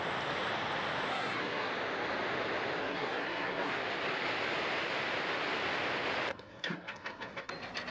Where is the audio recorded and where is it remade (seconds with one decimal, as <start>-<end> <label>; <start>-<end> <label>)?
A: 0.0-1.1 recorded; 1.1-1.7 remade; 1.7-2.8 recorded; 2.8-3.7 remade; 3.7-6.3 recorded; 6.3-7.5 remade; 7.5-7.9 recorded